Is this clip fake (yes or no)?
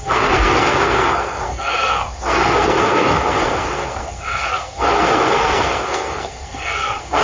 yes